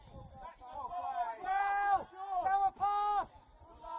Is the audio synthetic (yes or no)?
no